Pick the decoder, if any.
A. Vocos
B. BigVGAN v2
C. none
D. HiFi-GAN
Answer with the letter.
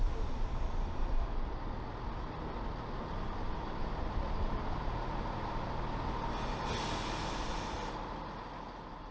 C